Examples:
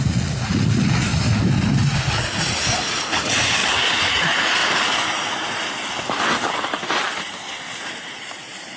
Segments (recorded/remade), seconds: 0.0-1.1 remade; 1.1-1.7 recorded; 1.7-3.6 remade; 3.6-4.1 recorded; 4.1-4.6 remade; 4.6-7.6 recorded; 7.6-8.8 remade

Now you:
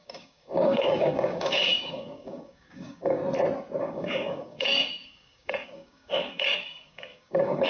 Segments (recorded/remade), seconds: 0.0-3.2 remade; 3.2-3.8 recorded; 3.8-7.7 remade

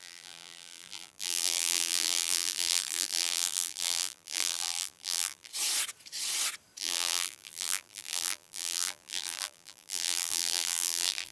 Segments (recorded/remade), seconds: 0.0-5.5 remade; 5.5-6.8 recorded; 6.8-11.3 remade